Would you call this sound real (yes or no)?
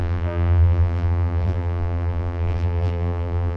no